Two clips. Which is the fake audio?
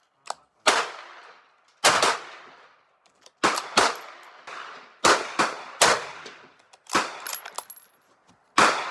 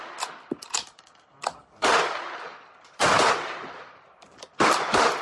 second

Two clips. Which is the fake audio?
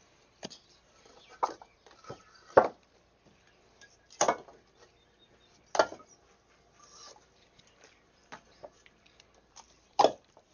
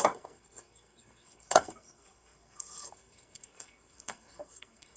second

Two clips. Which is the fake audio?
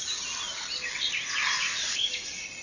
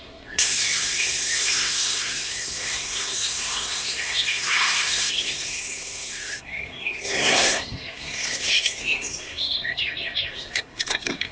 second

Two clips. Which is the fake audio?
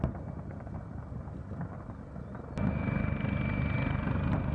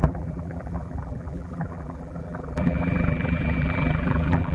second